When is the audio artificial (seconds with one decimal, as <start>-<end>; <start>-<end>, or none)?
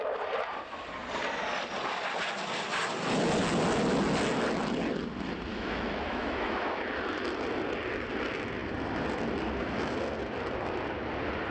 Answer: 5.5-6.8